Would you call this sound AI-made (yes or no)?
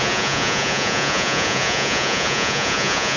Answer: yes